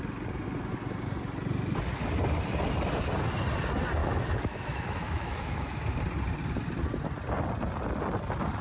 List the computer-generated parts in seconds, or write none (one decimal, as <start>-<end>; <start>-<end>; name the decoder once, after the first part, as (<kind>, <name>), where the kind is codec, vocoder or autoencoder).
4.0-6.0 (autoencoder, DAC-VAE)